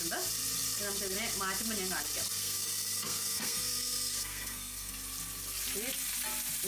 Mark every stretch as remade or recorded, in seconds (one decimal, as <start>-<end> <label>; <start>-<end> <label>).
0.0-2.4 recorded; 2.4-4.9 remade; 4.9-6.7 recorded